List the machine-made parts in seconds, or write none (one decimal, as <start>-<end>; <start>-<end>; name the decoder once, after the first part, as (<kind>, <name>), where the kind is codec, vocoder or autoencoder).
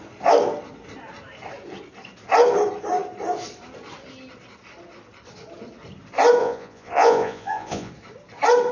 6.4-7.9 (vocoder, Vocos)